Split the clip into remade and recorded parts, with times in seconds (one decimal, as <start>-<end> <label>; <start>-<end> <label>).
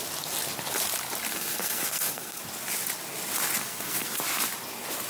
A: 0.0-1.3 recorded; 1.3-2.4 remade; 2.4-3.6 recorded; 3.6-4.2 remade; 4.2-5.1 recorded